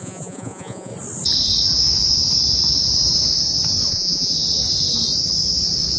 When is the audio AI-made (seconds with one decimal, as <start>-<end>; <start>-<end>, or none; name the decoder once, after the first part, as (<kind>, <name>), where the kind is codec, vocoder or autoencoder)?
0.0-0.9 (vocoder, Vocos); 3.9-4.3